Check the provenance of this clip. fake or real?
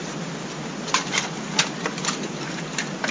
real